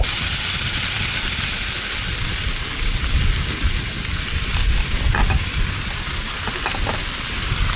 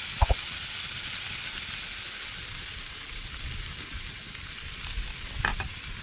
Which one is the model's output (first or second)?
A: first